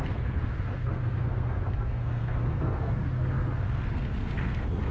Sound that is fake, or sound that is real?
fake